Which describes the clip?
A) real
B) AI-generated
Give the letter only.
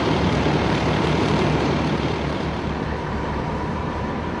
B